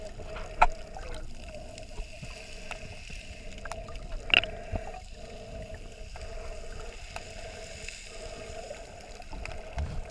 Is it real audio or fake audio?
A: real